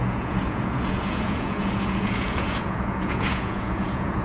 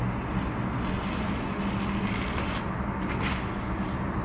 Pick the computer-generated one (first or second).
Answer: first